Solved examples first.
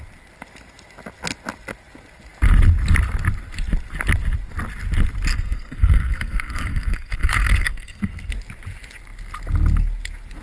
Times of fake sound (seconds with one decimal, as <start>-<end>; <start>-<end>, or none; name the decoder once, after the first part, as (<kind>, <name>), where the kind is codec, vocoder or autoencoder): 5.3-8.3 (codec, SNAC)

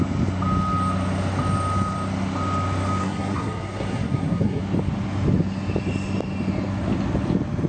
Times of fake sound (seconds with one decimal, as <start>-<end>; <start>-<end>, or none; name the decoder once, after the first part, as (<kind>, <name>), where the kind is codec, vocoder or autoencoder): 3.0-4.6 (codec, SNAC)

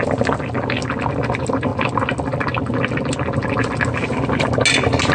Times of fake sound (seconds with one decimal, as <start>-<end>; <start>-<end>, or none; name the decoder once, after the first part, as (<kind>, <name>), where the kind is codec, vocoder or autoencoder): none

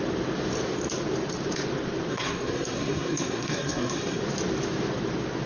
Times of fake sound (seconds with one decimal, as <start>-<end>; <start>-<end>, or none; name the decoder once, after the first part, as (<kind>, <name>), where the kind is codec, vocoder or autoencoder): 2.1-4.2 (codec, SNAC)

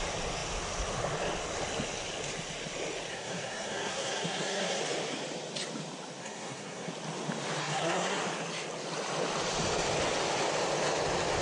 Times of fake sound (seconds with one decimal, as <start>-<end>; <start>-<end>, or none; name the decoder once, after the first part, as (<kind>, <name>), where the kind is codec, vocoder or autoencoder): 3.1-4.8 (codec, SNAC); 6.2-6.9; 7.6-8.2

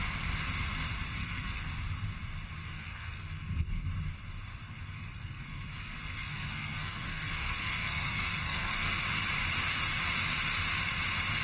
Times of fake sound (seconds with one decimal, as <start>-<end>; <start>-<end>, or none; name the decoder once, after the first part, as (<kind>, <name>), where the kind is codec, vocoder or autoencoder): 1.2-1.7 (codec, SNAC); 2.6-3.8; 4.7-9.0

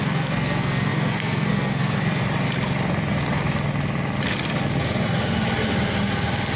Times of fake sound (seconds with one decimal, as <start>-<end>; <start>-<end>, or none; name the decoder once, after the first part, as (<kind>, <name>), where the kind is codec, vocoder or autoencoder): 0.0-2.2 (codec, SNAC)